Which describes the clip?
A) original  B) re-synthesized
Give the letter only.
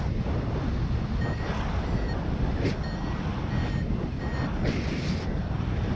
A